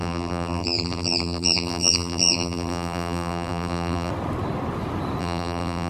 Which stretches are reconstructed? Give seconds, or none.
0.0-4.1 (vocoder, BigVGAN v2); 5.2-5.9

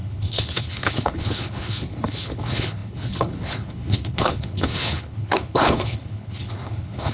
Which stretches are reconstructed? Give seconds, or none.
0.0-7.1 (codec, HILCodec)

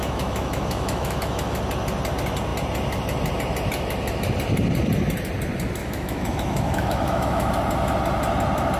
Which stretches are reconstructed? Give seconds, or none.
0.0-1.6 (autoencoder, DAC-VAE); 5.8-7.5

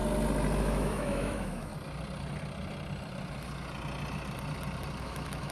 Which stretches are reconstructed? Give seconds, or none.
0.6-1.7 (autoencoder, DAC-VAE); 5.0-5.5